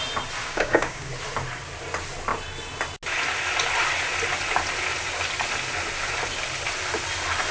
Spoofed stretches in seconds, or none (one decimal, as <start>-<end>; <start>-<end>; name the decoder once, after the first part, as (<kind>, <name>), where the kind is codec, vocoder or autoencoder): 0.4-1.1 (codec, DAC)